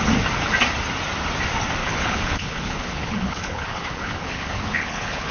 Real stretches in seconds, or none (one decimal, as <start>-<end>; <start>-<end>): 0.0-1.8